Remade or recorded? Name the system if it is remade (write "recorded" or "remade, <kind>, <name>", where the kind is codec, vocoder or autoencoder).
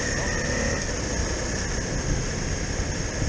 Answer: recorded